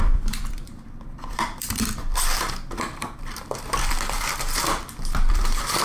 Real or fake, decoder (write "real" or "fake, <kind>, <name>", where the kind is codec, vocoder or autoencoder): fake, vocoder, BigVGAN v2